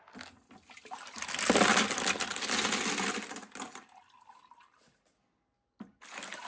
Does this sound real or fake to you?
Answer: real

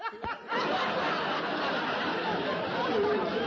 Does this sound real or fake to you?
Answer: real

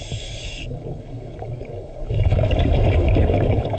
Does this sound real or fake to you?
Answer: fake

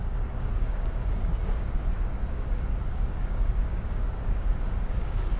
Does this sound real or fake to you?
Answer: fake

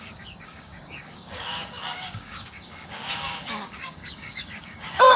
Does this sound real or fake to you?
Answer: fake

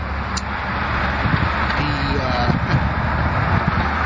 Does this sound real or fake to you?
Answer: real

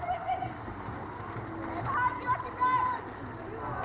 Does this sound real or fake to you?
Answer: real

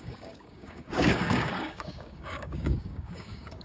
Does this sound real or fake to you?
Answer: fake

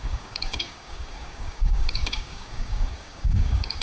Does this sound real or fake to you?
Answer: fake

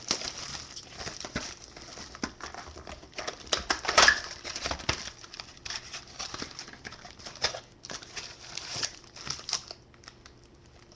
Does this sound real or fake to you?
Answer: real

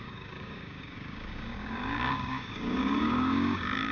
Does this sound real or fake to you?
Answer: fake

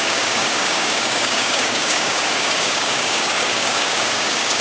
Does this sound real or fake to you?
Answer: fake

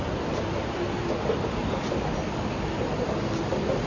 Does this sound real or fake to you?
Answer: real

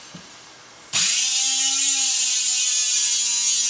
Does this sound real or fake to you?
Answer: real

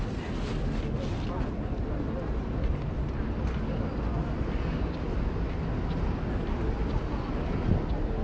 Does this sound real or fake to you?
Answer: real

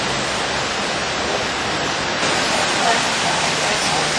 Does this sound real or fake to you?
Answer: real